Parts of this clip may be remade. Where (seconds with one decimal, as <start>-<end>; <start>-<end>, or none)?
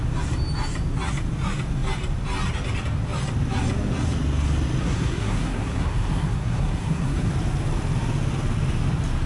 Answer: 4.8-7.3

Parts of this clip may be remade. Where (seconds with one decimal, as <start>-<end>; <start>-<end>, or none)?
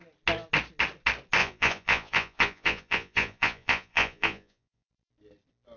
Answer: 1.4-4.9